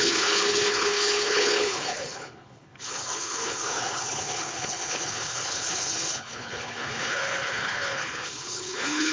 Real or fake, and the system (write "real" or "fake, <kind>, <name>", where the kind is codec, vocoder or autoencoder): fake, codec, HILCodec